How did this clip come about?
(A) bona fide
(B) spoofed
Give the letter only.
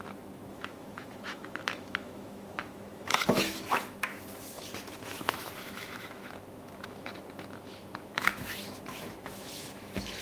B